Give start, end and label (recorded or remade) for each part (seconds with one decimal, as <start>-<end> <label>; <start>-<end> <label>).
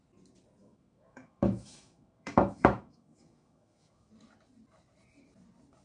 0.0-0.6 recorded; 0.6-4.1 remade; 4.1-5.8 recorded